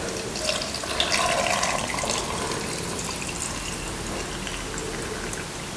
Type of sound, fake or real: real